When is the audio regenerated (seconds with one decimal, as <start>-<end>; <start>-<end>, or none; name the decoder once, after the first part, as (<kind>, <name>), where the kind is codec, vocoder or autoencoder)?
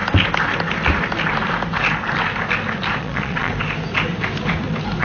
3.0-3.5 (vocoder, Vocos)